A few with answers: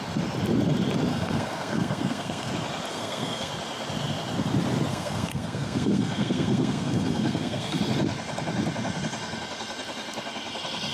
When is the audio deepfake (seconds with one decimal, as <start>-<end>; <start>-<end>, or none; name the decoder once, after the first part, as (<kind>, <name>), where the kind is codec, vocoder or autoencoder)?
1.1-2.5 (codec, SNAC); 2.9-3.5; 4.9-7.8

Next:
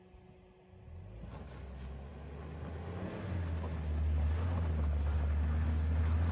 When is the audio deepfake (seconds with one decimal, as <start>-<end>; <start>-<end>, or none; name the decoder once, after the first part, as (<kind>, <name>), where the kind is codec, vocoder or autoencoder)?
none

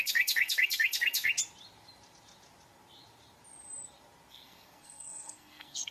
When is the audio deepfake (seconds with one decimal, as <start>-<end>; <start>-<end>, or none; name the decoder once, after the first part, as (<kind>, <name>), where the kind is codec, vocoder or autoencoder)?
0.0-1.3 (codec, SNAC); 4.3-5.9

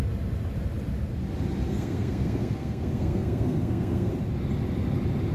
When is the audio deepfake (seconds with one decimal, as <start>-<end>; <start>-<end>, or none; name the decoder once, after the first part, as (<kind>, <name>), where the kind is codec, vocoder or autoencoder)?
1.7-4.1 (codec, SNAC)

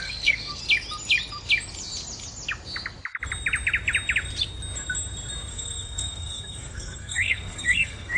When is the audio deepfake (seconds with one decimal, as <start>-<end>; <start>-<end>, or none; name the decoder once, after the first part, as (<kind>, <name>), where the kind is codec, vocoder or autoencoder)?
0.0-0.6 (codec, SNAC); 5.5-8.2

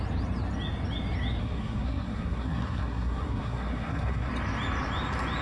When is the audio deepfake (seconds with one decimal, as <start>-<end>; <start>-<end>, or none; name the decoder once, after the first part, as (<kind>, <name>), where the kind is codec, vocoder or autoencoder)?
1.4-4.3 (codec, SNAC)